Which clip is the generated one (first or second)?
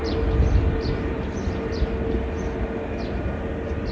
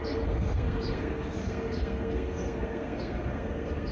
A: second